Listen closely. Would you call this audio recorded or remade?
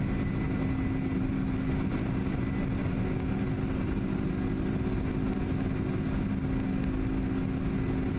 recorded